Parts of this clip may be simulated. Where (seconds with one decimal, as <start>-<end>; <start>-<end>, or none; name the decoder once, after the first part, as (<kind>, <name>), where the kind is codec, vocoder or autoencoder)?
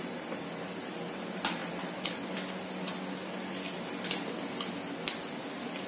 none